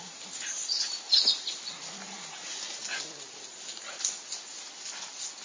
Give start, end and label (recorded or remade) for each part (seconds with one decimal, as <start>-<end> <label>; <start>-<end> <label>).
0.0-5.4 recorded